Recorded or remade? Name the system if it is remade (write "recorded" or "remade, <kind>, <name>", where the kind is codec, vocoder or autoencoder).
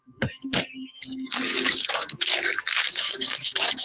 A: remade, codec, DAC